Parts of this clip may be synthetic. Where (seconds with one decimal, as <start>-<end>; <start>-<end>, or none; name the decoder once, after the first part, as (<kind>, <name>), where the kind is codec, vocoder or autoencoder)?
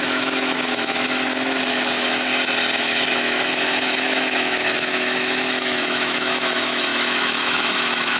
0.0-2.3 (autoencoder, DAC-VAE); 2.8-8.2